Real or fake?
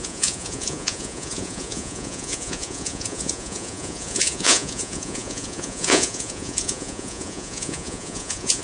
fake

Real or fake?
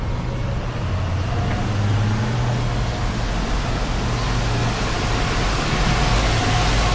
real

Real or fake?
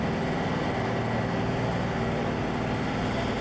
real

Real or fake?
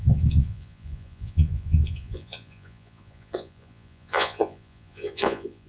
fake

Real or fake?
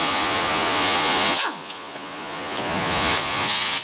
fake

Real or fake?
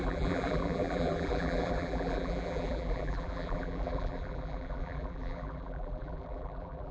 fake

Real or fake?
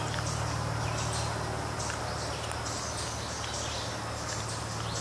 real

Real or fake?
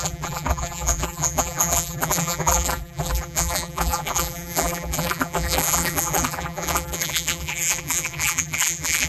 fake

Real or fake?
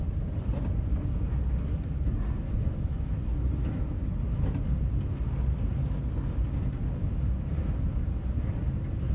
real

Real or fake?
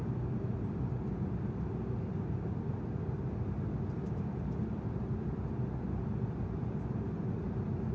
real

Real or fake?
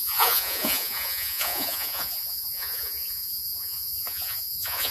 fake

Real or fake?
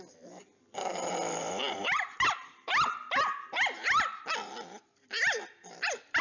real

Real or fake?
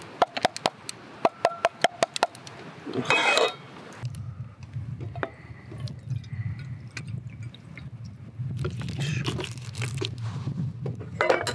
real